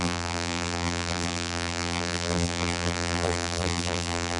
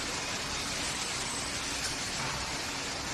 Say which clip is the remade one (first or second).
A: first